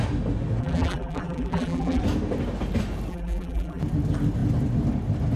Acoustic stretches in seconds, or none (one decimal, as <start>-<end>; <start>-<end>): 0.0-0.6; 2.0-3.1; 3.8-5.4